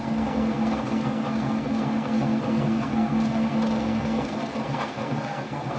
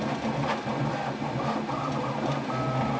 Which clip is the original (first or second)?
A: second